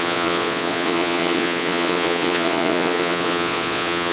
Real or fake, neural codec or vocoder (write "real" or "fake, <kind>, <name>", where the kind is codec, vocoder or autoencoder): fake, vocoder, Vocos